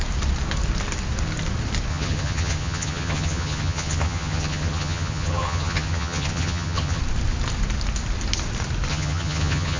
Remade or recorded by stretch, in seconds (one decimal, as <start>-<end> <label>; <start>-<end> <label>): 0.0-1.9 recorded; 1.9-7.0 remade; 7.0-8.9 recorded; 8.9-9.8 remade